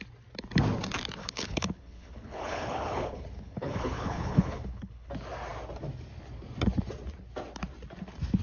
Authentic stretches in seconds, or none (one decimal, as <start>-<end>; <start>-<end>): 0.0-1.2; 5.1-8.4